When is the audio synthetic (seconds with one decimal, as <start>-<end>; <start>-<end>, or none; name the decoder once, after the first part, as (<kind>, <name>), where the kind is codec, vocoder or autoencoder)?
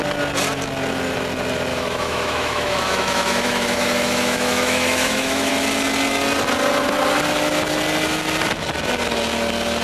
1.7-5.5 (autoencoder, DAC-VAE)